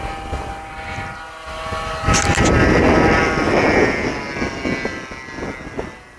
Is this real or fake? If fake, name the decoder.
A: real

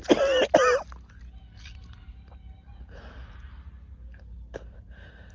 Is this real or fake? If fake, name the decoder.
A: real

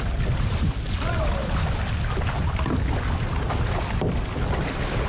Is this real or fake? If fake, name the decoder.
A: real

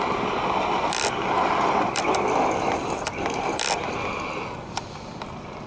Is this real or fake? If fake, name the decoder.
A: real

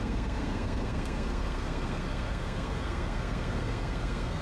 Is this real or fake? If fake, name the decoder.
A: fake, codec, SNAC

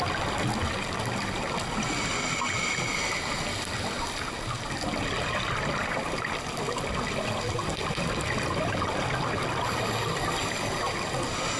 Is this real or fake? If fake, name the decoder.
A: real